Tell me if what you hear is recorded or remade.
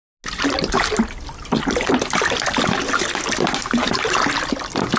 recorded